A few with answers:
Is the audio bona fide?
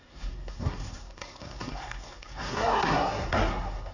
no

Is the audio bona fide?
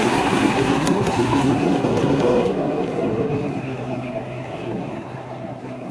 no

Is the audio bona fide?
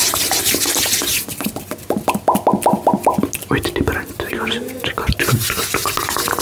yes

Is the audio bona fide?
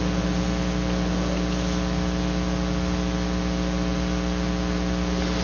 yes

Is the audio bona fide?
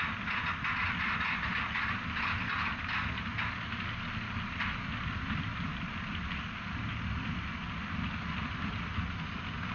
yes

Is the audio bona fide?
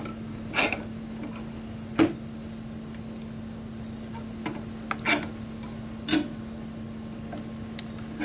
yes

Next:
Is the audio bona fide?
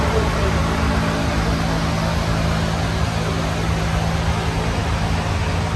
yes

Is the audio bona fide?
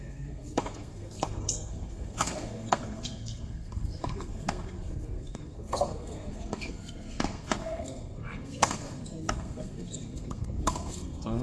no